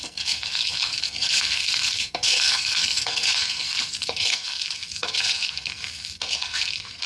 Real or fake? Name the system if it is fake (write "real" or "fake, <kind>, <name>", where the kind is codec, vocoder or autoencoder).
fake, codec, SNAC